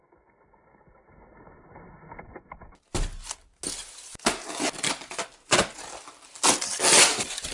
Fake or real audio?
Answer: real